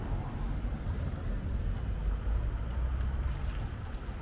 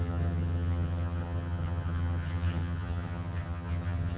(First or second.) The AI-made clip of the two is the second